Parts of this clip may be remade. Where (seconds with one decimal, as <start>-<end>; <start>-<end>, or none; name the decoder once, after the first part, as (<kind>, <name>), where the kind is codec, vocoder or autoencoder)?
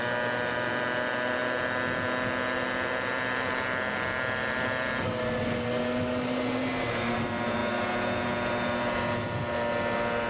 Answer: none